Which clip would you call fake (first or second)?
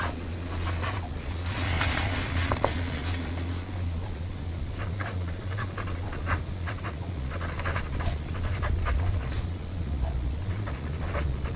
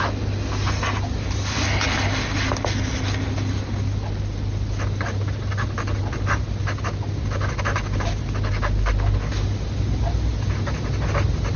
first